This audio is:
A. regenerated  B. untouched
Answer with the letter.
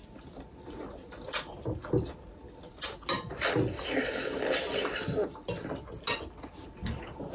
B